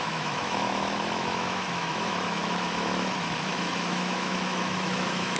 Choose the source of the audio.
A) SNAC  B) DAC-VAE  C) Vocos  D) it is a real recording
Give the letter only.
B